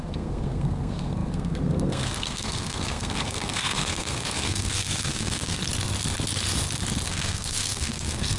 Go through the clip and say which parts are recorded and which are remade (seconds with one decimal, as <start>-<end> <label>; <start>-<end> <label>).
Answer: 0.0-5.6 remade; 5.6-7.1 recorded; 7.1-8.4 remade